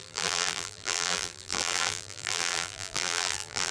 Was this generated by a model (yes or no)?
yes